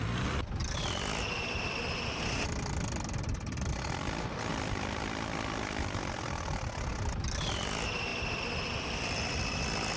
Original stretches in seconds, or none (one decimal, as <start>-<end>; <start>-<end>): 0.0-0.6; 1.8-4.5; 6.9-10.0